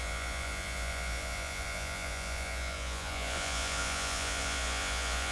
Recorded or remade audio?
remade